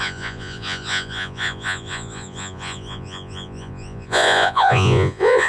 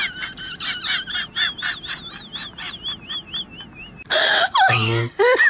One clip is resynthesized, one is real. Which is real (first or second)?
second